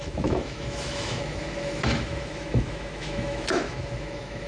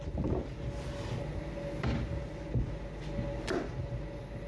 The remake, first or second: first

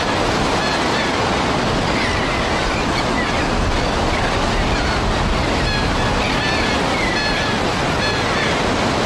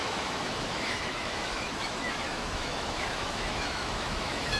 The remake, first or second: second